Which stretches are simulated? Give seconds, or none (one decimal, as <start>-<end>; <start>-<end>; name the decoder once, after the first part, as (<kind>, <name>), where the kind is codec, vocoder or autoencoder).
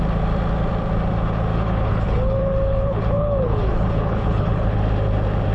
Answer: 1.5-4.8 (codec, HILCodec)